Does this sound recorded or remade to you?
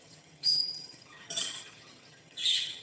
remade